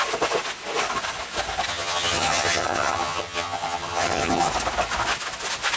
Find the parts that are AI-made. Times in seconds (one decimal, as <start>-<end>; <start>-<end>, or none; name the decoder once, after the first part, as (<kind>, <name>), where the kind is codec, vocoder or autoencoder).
1.7-4.5 (vocoder, HiFi-GAN)